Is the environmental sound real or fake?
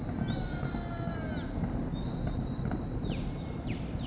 real